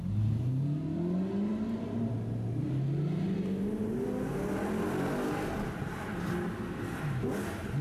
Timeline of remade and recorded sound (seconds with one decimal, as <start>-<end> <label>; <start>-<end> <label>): 0.0-7.8 recorded